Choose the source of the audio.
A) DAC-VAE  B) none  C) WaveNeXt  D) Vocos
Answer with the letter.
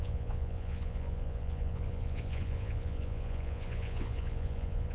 D